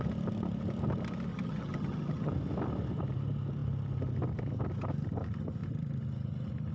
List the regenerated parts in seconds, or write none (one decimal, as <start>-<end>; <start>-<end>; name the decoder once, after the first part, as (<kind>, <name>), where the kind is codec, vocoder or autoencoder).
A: 1.3-2.3 (vocoder, HiFi-GAN)